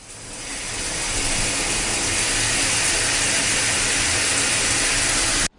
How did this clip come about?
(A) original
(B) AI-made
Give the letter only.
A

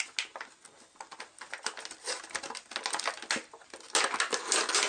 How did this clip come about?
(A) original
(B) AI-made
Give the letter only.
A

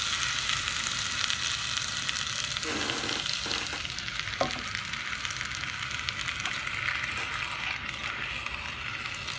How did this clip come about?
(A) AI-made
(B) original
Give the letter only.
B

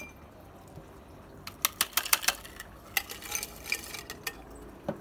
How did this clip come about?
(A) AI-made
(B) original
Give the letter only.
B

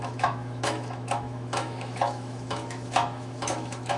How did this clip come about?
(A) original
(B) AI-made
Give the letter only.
B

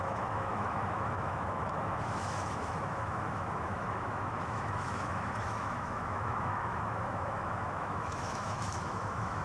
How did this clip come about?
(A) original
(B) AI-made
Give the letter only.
B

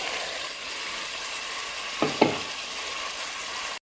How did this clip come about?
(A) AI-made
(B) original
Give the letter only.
B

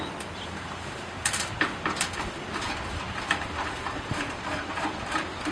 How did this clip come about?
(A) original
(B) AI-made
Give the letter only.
B